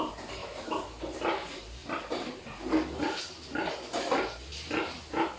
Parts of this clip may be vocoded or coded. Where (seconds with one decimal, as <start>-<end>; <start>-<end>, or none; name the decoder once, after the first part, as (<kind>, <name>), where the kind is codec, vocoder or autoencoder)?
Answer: 0.4-0.9 (autoencoder, DAC-VAE)